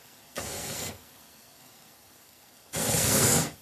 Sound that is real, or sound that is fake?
fake